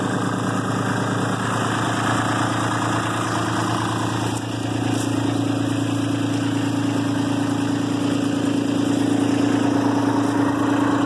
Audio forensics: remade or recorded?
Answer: recorded